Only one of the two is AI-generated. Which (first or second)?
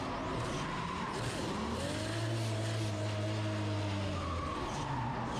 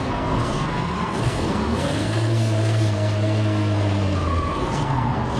second